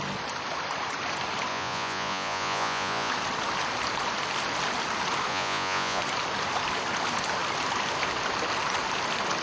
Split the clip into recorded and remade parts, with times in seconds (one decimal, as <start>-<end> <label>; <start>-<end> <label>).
0.0-1.5 recorded; 1.5-3.1 remade; 3.1-5.3 recorded; 5.3-6.0 remade; 6.0-9.4 recorded